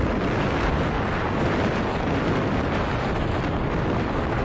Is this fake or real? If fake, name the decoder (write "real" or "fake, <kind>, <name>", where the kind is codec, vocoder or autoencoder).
real